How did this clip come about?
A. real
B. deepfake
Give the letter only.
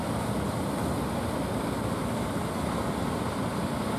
A